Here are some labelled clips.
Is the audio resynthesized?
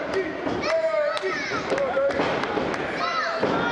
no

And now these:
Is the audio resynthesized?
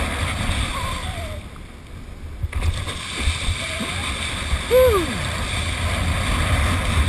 no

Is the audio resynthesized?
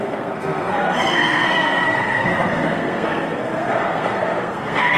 yes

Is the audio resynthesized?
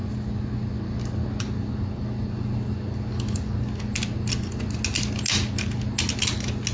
no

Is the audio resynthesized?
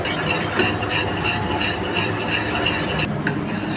no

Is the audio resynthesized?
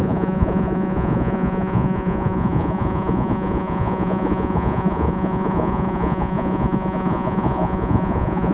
yes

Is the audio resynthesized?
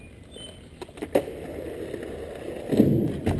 no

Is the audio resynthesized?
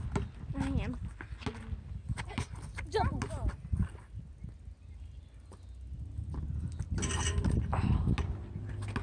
no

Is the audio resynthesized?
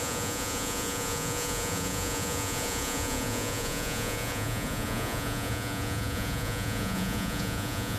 yes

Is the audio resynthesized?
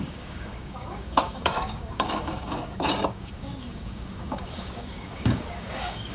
yes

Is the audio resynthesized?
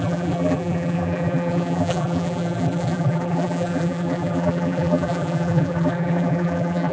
yes